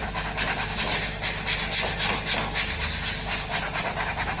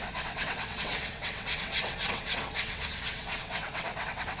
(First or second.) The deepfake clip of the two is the second